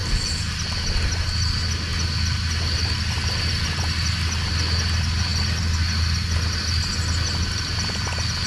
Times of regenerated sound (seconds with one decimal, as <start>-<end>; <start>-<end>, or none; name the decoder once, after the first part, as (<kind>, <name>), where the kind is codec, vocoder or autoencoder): none